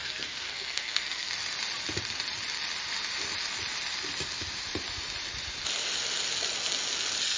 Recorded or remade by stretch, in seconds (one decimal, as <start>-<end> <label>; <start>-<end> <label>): 0.0-1.3 remade; 1.3-7.4 recorded